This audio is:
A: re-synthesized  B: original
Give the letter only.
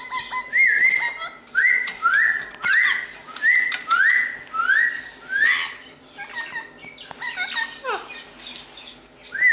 B